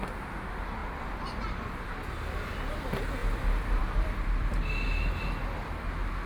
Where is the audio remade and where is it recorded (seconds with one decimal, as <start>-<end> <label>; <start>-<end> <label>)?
0.0-3.2 recorded; 3.2-5.1 remade; 5.1-6.3 recorded